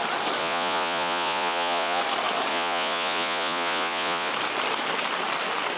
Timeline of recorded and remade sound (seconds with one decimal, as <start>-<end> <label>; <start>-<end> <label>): 0.0-0.4 recorded; 0.4-2.0 remade; 2.0-2.5 recorded; 2.5-4.3 remade; 4.3-5.8 recorded